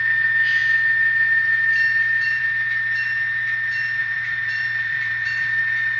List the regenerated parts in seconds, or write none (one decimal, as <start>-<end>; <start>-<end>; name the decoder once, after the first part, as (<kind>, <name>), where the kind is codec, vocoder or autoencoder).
4.0-5.6 (vocoder, BigVGAN v2)